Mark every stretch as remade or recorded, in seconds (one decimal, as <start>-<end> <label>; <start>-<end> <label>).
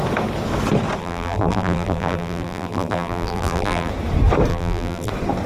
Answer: 0.0-1.0 recorded; 1.0-3.9 remade; 3.9-4.5 recorded; 4.5-5.1 remade; 5.1-5.5 recorded